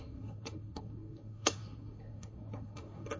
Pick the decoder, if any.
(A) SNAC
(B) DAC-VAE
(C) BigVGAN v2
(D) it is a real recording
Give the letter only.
A